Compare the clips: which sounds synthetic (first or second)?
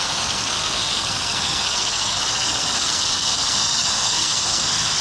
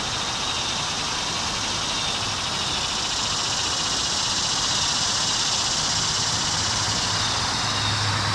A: first